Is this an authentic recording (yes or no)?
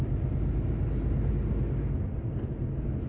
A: yes